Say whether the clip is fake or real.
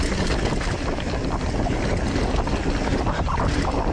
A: real